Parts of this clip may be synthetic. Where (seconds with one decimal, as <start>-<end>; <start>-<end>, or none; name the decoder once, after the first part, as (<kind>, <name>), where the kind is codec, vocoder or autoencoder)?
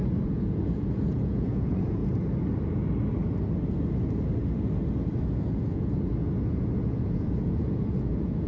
0.0-2.0 (vocoder, Vocos); 5.2-8.5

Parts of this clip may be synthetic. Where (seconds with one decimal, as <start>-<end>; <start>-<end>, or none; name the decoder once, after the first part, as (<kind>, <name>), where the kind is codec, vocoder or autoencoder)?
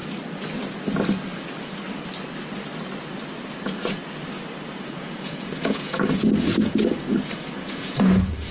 3.6-4.0 (vocoder, Vocos); 4.8-8.5